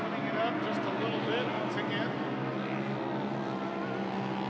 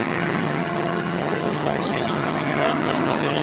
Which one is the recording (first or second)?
first